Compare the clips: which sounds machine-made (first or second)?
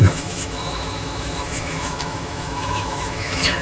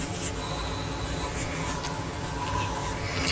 first